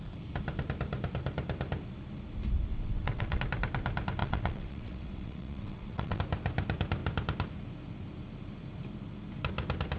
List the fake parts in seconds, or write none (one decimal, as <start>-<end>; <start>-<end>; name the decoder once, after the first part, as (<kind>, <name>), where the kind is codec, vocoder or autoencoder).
2.7-3.4 (vocoder, WaveNeXt); 4.2-6.2